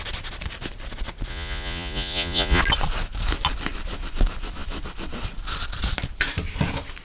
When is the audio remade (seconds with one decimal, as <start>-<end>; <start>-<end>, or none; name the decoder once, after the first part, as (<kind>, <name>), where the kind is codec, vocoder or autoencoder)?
1.3-2.6 (vocoder, Vocos)